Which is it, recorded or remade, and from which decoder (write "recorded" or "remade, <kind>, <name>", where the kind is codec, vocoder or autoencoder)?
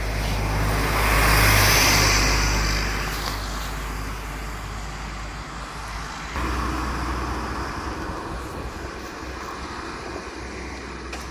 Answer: recorded